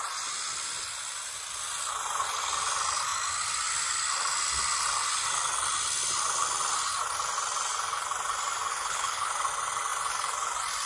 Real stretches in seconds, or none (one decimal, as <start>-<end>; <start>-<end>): 0.0-8.7; 9.3-10.9